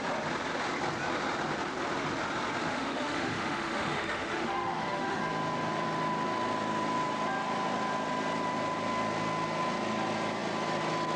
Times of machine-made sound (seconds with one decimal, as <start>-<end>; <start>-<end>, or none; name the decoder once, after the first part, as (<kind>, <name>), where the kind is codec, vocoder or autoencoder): 2.6-5.2 (autoencoder, DAC-VAE)